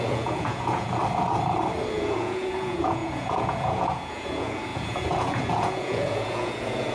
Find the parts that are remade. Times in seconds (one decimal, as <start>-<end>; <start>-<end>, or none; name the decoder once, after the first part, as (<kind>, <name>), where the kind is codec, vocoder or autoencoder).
0.0-1.0 (vocoder, Vocos); 1.9-6.9